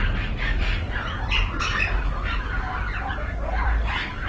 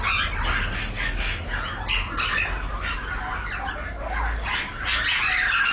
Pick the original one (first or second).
second